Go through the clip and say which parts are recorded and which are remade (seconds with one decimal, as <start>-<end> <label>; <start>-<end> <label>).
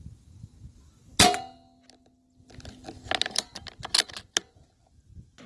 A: 0.0-5.5 recorded